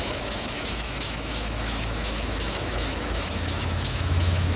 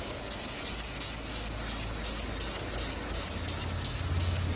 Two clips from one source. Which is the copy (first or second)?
first